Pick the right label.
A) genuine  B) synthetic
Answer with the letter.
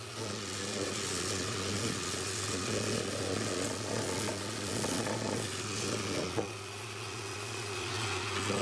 B